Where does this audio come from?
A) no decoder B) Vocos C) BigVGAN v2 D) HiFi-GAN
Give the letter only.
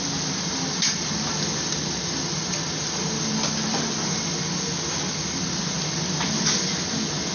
A